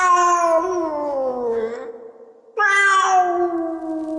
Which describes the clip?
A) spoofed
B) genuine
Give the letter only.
B